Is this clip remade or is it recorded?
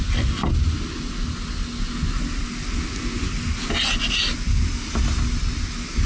recorded